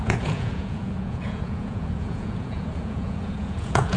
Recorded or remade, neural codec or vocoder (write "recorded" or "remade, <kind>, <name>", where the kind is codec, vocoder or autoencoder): remade, vocoder, Vocos